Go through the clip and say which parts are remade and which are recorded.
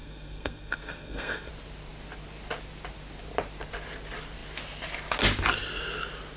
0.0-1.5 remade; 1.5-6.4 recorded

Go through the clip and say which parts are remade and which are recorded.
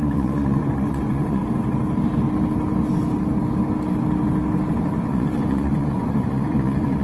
0.0-1.4 remade; 1.4-5.0 recorded; 5.0-7.0 remade